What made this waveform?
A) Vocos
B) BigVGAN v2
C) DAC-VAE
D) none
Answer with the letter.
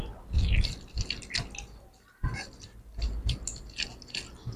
D